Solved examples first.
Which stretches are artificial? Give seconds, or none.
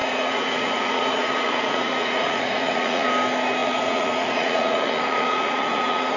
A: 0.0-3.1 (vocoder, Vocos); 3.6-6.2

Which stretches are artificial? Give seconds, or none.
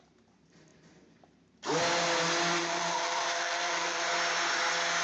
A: 2.6-4.1 (vocoder, BigVGAN v2)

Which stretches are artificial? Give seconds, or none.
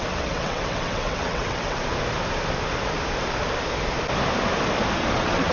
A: 0.0-1.8 (vocoder, WaveNeXt); 5.1-5.5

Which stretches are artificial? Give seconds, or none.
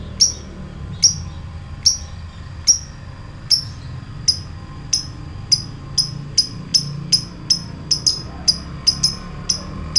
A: none